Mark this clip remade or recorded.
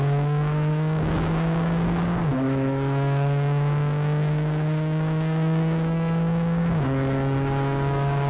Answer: remade